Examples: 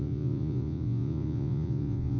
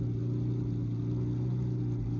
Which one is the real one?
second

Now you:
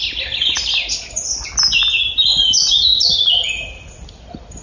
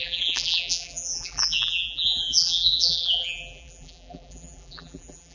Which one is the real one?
first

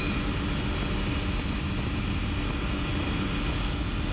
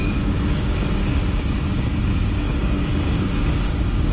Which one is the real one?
first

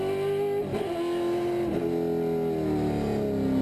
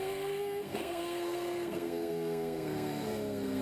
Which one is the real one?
first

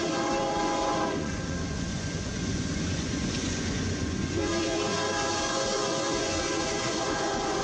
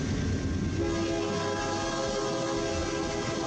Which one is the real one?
second